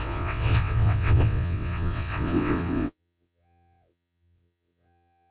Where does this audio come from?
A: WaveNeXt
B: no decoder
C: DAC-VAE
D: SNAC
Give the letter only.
A